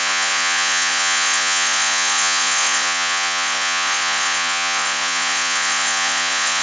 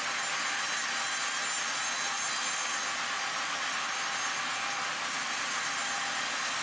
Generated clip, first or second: first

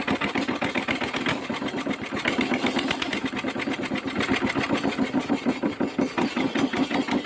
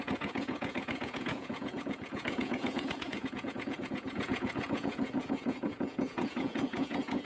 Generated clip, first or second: second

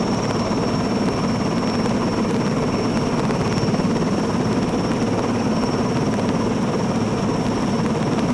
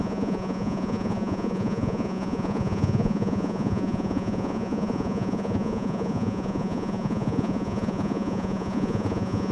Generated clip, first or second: second